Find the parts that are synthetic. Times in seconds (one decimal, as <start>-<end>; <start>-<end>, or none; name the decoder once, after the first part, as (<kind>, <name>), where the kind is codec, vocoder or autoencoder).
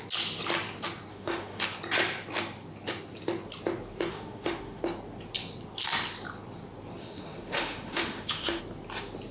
1.1-1.6 (autoencoder, DAC-VAE); 4.1-4.8; 7.0-8.6